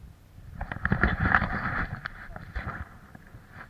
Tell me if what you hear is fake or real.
fake